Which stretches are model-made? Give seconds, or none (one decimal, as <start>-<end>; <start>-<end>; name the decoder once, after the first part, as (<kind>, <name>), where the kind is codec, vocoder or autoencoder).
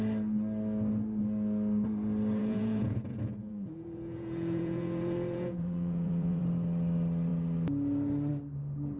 2.4-6.4 (vocoder, Vocos)